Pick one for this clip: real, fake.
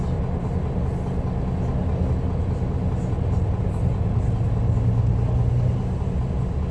real